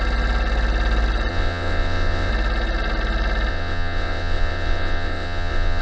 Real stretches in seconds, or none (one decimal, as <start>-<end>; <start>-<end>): 0.0-1.3; 2.3-3.5